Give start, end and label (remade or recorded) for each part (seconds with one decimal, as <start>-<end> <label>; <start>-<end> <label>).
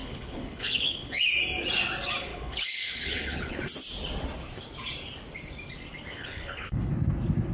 0.0-1.3 remade; 1.3-2.3 recorded; 2.3-3.6 remade; 3.6-6.1 recorded; 6.1-6.9 remade; 6.9-7.5 recorded